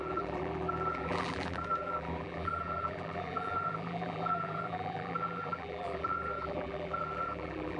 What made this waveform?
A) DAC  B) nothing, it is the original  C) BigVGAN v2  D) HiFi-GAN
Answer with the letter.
C